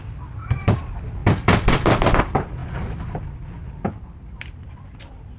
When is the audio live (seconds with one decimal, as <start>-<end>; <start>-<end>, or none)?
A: 2.6-4.2